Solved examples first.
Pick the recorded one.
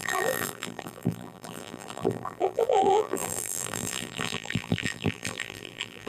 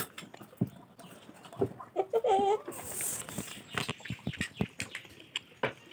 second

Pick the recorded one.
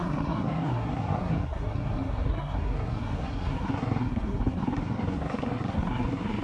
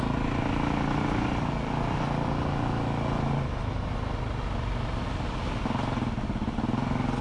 second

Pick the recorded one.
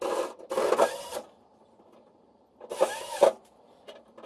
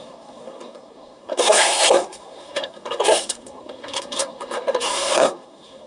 first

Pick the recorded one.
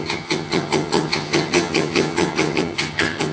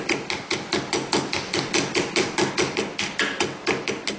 second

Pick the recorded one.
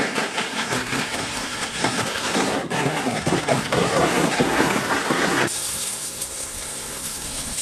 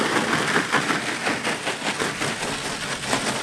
second